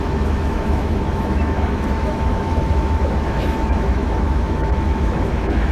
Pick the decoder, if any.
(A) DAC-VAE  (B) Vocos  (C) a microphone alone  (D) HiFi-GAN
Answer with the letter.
A